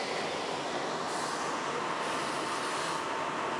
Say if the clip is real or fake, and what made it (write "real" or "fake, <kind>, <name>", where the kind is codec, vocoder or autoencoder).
real